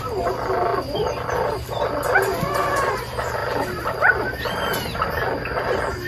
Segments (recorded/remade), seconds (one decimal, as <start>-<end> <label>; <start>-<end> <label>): 0.0-6.1 recorded